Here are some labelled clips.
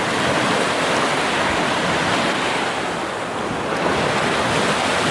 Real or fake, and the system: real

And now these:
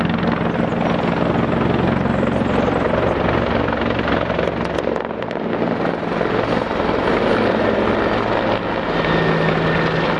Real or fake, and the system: real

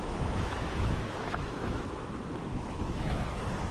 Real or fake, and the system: fake, autoencoder, DAC-VAE